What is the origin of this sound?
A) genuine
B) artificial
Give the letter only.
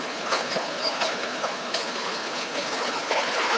B